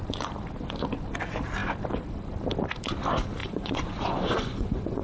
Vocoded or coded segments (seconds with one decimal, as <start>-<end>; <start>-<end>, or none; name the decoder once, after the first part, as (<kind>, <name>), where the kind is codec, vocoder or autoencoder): 3.4-5.0 (vocoder, Vocos)